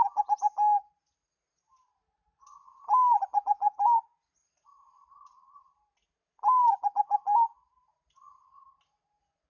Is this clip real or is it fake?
real